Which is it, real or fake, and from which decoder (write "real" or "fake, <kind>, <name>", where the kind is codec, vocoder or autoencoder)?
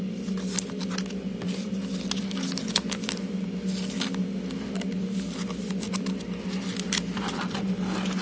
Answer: real